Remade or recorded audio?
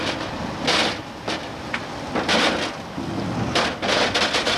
recorded